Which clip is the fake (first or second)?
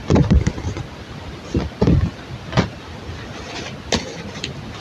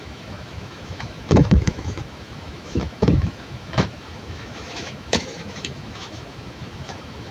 second